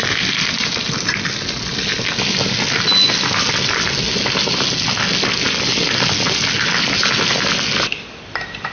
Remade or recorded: recorded